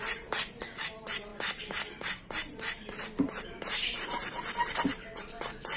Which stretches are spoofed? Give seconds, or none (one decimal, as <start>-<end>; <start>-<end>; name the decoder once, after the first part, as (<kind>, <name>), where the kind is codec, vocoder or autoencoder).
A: 0.0-4.2 (vocoder, BigVGAN v2); 4.9-5.8